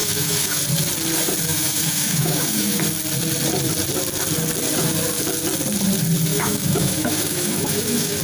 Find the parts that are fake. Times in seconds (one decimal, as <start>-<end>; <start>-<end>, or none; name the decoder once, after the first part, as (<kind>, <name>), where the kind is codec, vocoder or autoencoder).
0.0-0.6 (autoencoder, DAC-VAE); 1.5-2.8; 6.3-8.2